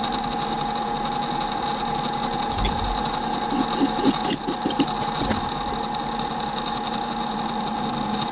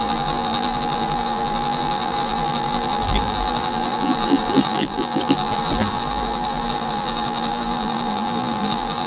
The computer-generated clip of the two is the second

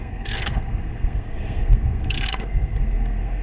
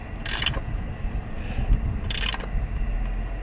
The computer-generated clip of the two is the first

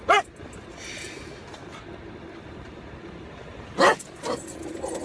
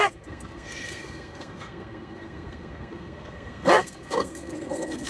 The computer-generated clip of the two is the second